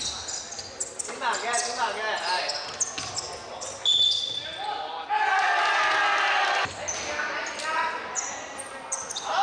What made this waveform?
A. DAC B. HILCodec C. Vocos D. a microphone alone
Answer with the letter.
D